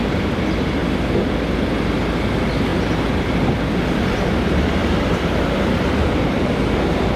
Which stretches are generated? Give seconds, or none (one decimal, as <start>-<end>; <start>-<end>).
0.0-0.8; 2.3-7.2